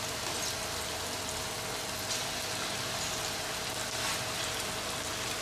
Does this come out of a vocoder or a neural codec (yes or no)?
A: no